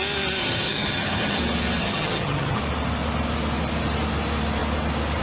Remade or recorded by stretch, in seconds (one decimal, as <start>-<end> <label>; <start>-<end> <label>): 0.0-0.4 recorded; 0.4-1.4 remade; 1.4-1.8 recorded; 1.8-2.6 remade; 2.6-5.2 recorded